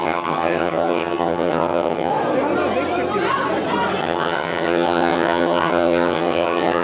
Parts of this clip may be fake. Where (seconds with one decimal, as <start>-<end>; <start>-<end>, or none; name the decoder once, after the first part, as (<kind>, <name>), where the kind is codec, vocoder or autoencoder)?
0.0-2.1 (vocoder, HiFi-GAN); 4.0-6.8